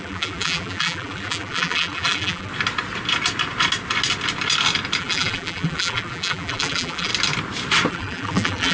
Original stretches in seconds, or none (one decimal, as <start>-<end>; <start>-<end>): 2.5-5.0; 7.1-7.9